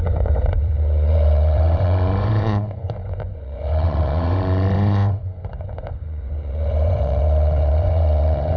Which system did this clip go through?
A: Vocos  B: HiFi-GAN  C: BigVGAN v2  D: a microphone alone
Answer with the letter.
A